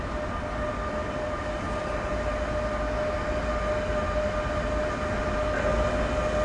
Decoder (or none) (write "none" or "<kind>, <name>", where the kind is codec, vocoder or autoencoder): none